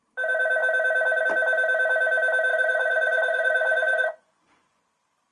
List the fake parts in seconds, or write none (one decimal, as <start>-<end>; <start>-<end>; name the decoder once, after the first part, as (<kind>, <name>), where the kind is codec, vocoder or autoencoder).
2.5-4.8 (vocoder, Vocos)